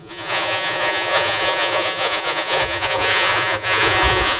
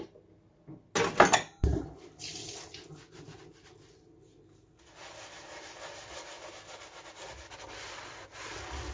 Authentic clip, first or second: second